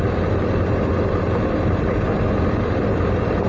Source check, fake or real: real